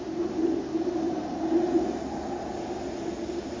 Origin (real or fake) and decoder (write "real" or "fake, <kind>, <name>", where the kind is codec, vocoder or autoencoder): real